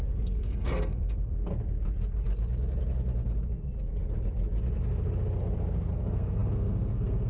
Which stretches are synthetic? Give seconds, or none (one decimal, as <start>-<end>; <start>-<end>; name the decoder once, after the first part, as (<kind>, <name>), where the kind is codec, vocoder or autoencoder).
0.0-1.5 (codec, SNAC); 5.9-7.3